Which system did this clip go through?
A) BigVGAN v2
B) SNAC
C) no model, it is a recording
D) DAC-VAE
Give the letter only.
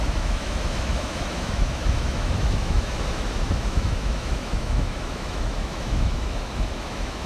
D